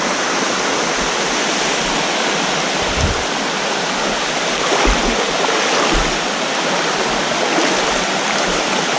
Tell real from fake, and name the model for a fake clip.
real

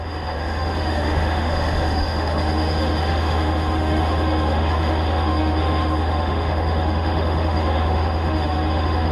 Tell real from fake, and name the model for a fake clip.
fake, autoencoder, DAC-VAE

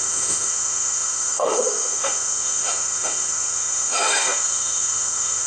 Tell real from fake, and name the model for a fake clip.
fake, autoencoder, DAC-VAE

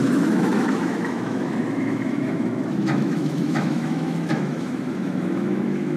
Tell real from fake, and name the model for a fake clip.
fake, autoencoder, DAC-VAE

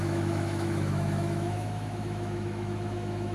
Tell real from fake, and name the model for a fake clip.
fake, autoencoder, DAC-VAE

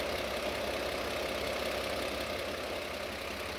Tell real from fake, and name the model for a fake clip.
real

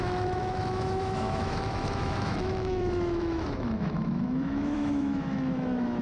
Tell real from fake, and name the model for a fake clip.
fake, autoencoder, DAC-VAE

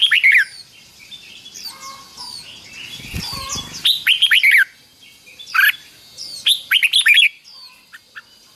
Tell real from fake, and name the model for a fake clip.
real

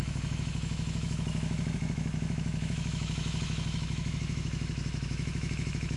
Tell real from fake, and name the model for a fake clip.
fake, autoencoder, DAC-VAE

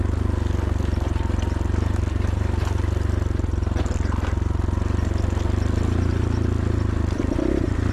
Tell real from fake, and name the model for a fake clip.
real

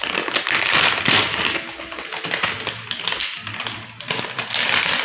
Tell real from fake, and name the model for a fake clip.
real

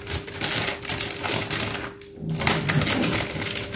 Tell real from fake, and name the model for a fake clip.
real